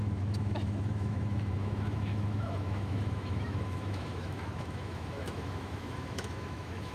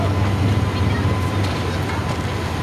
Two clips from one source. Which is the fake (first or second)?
first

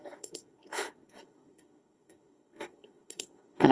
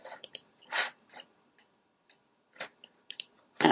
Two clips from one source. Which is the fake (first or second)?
first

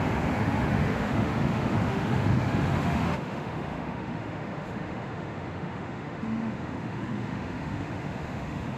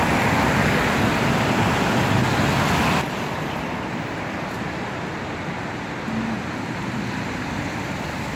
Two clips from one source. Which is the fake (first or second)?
first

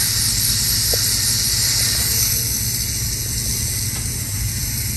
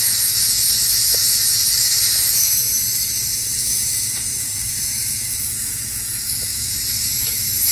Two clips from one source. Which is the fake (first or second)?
second